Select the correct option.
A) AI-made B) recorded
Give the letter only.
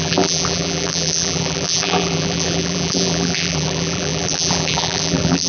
A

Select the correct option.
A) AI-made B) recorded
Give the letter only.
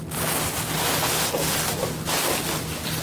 B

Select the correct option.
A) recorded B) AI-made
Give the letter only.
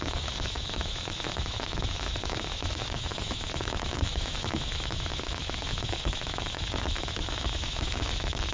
B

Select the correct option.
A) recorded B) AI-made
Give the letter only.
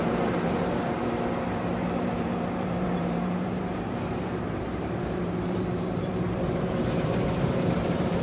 B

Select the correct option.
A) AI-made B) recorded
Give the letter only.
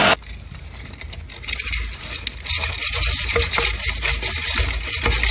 B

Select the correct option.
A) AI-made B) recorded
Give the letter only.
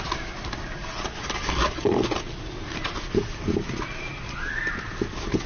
B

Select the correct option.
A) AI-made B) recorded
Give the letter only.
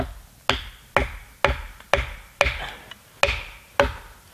B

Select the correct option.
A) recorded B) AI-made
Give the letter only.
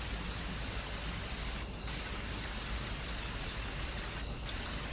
A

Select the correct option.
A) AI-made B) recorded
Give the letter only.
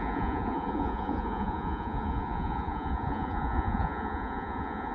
A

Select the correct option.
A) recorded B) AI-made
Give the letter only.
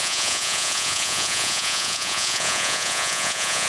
B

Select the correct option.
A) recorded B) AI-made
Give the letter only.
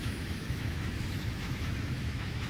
B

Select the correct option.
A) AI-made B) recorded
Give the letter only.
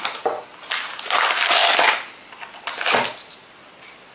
B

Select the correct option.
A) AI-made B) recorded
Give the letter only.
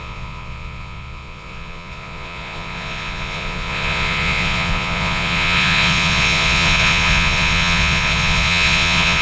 A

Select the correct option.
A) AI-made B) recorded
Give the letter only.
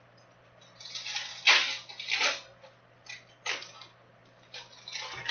B